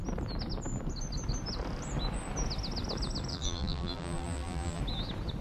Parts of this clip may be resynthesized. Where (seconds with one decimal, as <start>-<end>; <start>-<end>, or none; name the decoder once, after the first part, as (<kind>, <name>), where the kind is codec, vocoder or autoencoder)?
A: 3.3-4.8 (vocoder, BigVGAN v2)

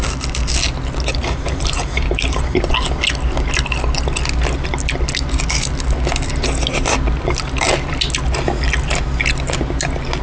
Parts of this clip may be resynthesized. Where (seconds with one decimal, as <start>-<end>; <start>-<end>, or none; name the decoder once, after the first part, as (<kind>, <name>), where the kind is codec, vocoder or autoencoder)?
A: 1.1-2.7 (vocoder, BigVGAN v2)

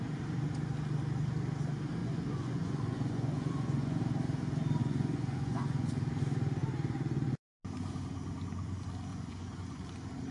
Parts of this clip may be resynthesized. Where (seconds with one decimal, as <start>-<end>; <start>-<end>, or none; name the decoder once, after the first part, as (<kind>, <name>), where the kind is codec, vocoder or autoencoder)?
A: 2.0-4.0 (vocoder, Vocos); 4.8-5.9; 9.1-9.8

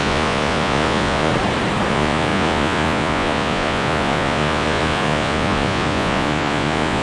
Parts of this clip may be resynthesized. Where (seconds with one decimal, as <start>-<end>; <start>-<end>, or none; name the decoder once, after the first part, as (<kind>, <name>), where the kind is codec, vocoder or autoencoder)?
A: 0.0-1.3 (vocoder, Vocos); 1.9-7.0

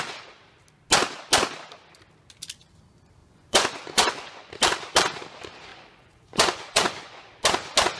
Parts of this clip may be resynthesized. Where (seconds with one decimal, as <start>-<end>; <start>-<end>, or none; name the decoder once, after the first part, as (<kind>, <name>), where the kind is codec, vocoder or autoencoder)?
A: 3.2-4.5 (vocoder, Vocos); 5.7-7.3